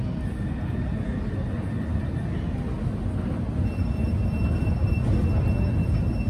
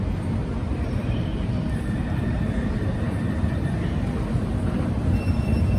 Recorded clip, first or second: first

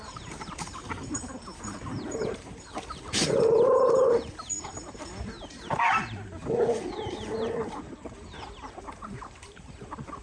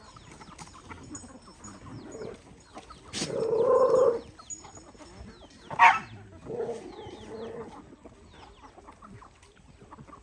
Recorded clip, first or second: second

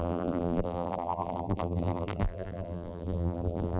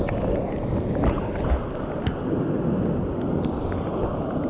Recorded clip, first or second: second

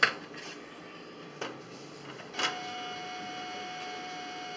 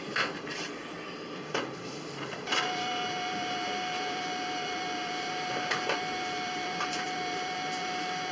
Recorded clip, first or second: first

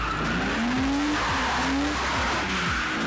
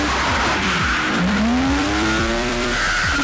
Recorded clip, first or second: first